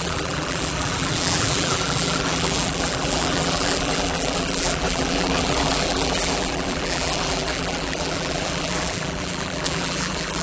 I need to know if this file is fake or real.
fake